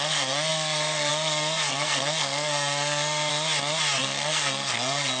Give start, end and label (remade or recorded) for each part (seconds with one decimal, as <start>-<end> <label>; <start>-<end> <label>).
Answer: 0.0-3.3 remade; 3.3-4.0 recorded; 4.0-5.2 remade